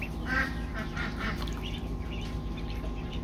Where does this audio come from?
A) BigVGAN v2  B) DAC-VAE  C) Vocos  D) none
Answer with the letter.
A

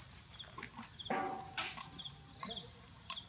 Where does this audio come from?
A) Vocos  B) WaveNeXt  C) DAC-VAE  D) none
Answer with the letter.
D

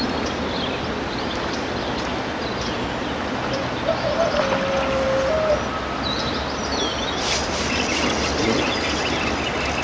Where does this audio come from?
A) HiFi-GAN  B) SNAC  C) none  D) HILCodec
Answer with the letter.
C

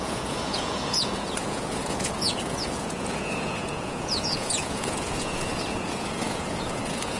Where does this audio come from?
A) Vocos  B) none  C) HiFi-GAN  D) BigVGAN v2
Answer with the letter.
A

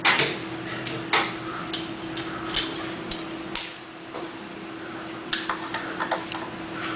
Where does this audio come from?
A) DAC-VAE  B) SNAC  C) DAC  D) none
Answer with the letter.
D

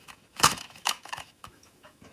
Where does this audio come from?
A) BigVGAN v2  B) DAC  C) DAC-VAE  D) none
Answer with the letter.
C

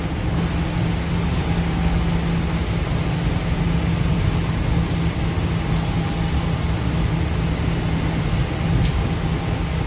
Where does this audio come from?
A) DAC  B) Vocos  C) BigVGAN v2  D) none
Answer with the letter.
D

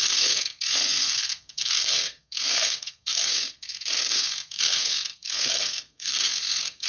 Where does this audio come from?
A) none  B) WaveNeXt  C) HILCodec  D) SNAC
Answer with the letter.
D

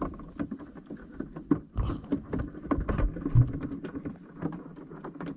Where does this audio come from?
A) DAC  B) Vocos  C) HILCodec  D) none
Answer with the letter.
D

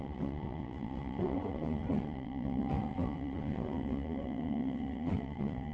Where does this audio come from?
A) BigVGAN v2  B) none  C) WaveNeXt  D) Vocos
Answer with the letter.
C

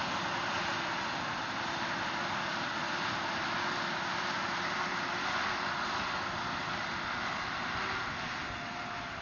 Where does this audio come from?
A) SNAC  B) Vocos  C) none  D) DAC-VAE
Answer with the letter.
C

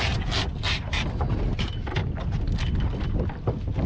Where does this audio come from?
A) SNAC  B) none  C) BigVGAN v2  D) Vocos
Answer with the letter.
B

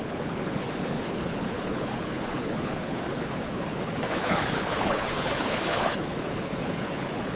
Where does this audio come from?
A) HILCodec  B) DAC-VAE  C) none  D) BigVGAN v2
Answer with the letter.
A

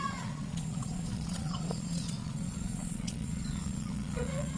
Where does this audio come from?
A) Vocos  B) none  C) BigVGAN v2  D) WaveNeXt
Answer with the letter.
A